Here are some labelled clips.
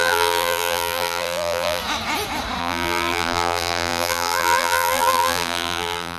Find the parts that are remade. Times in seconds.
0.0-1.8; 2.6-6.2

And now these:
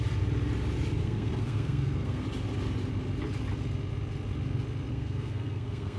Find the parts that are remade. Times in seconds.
1.0-2.2; 4.9-6.0

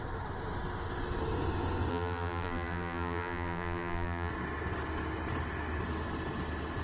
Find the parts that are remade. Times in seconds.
1.9-4.3